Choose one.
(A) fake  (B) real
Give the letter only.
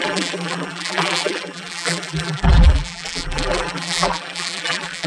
A